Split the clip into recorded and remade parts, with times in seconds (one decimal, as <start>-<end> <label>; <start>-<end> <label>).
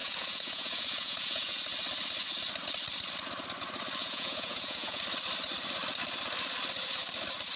0.0-1.6 remade; 1.6-4.0 recorded; 4.0-5.0 remade; 5.0-7.6 recorded